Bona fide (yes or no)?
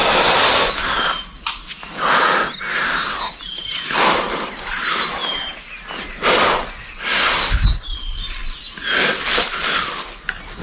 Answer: yes